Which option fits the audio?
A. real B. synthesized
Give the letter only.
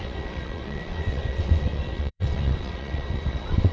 B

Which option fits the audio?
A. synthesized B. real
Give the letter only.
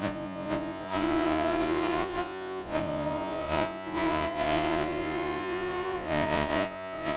A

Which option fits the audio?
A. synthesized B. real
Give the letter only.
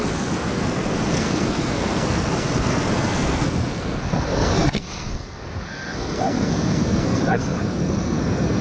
A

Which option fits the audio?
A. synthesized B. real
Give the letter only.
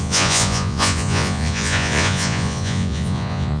A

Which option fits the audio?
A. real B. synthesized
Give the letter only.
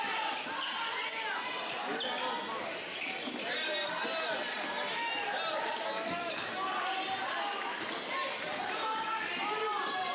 A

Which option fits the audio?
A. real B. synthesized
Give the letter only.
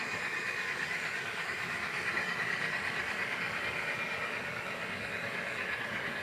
B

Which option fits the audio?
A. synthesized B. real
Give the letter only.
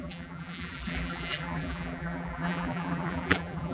A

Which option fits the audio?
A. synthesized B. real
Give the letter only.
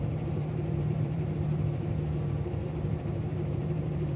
A